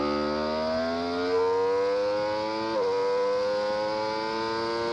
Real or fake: real